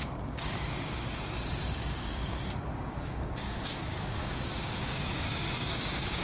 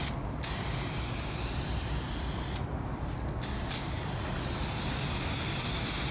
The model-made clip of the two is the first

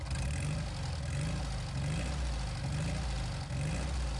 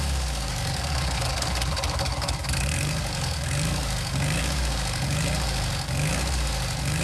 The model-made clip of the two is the second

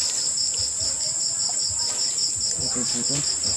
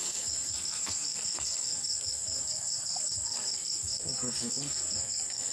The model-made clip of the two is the second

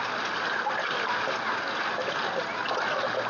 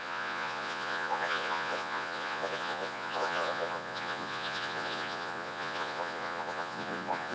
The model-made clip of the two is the second